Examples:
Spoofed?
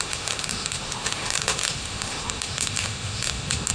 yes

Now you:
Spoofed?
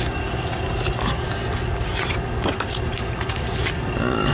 no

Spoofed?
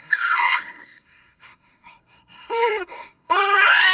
yes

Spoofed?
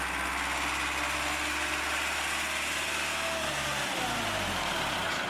no